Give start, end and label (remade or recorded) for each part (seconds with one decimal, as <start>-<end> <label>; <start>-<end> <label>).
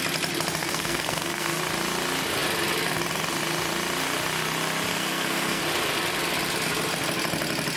0.0-0.6 recorded; 0.6-1.6 remade; 1.6-4.9 recorded; 4.9-5.6 remade; 5.6-7.8 recorded